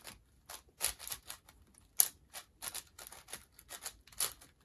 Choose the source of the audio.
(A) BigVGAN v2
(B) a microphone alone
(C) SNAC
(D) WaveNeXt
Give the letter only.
B